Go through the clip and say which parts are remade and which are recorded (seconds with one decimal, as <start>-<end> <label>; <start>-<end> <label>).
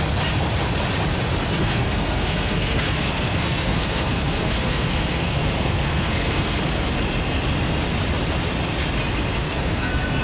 0.0-1.6 recorded; 1.6-6.6 remade; 6.6-9.4 recorded; 9.4-10.2 remade